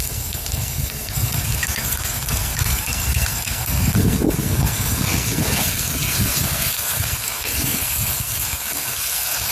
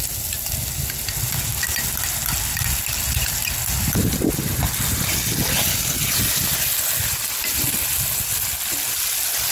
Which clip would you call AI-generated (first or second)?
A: first